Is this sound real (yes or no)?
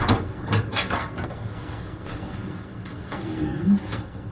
no